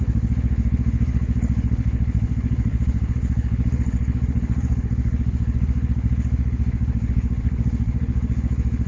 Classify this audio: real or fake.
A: fake